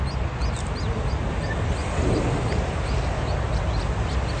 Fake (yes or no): no